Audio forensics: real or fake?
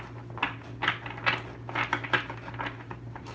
real